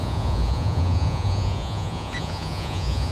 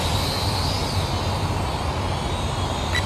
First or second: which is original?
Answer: second